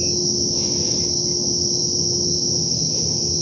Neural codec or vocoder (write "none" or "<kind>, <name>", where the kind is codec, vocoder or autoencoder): none